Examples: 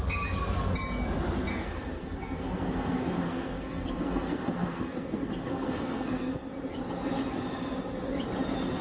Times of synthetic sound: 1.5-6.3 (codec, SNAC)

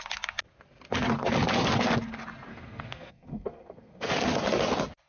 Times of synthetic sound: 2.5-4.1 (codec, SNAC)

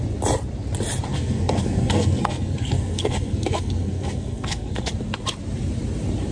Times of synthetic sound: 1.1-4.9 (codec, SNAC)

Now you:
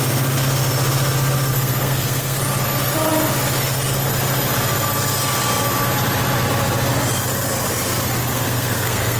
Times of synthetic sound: 1.5-2.4 (codec, SNAC); 8.3-9.2

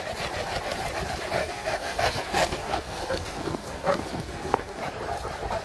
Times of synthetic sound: 1.4-4.8 (codec, SNAC)

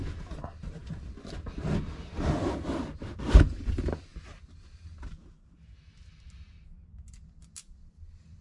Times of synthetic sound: none